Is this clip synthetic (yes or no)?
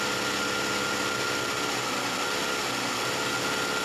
no